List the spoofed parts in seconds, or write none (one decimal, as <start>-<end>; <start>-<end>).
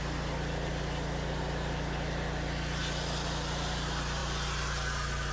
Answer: none